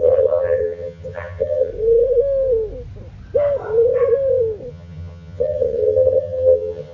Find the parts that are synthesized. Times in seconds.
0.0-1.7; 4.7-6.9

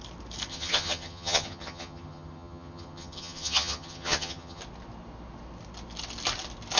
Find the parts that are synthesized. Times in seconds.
0.5-4.6

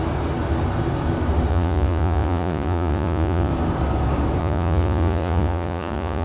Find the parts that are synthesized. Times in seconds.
1.5-3.5; 4.4-6.2